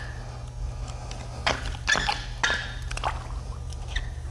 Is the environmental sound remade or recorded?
recorded